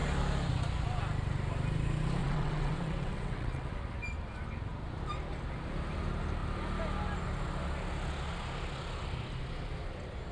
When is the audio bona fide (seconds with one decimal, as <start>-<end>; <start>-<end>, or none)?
0.0-2.2; 3.7-10.3

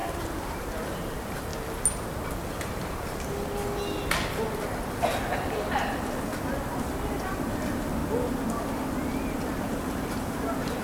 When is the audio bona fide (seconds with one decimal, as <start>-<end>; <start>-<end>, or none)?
1.5-5.0; 8.0-9.6

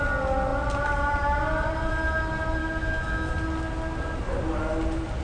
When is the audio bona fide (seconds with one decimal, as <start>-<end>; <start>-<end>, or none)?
0.0-2.6; 3.3-5.2

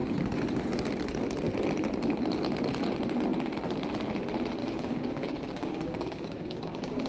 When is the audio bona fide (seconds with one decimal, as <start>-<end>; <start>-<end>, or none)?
0.0-4.6

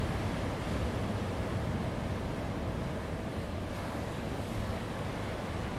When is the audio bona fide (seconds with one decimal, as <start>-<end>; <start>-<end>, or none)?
0.0-3.3; 5.1-5.8